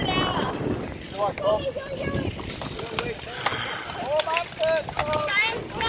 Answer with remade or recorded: recorded